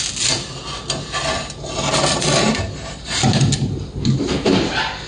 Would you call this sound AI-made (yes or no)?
no